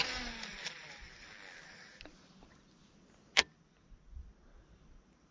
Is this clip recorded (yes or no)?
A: yes